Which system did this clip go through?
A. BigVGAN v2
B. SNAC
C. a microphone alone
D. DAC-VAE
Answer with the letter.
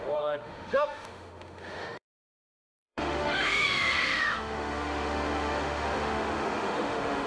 D